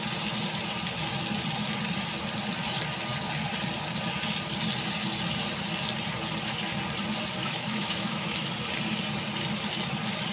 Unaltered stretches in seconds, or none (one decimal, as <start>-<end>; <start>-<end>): 0.0-7.4; 8.5-10.3